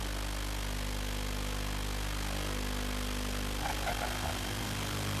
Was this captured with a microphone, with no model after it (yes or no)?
yes